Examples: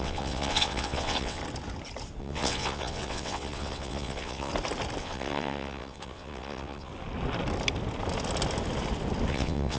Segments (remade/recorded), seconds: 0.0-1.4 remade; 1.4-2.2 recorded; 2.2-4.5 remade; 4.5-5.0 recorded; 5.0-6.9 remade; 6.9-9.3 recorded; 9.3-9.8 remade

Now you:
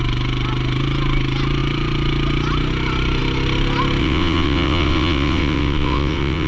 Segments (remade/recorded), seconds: 0.0-4.0 recorded; 4.0-6.5 remade

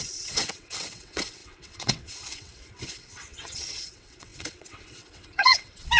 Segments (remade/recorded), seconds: 0.0-6.0 remade

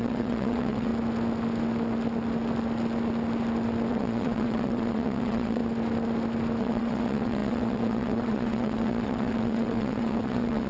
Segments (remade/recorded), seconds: 0.0-0.9 remade; 0.9-3.9 recorded; 3.9-5.6 remade; 5.6-6.6 recorded; 6.6-10.7 remade